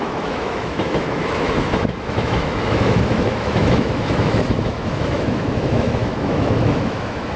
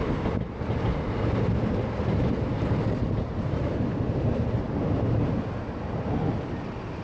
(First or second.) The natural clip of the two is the second